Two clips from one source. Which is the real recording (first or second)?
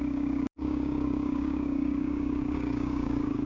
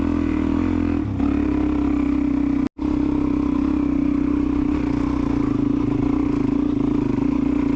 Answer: second